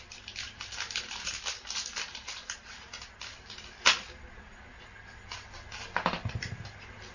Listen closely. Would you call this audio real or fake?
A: real